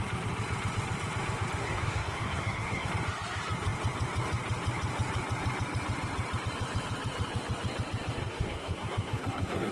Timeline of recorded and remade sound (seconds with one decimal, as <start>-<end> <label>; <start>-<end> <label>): 0.0-1.6 recorded; 1.6-2.9 remade; 2.9-8.2 recorded; 8.2-9.7 remade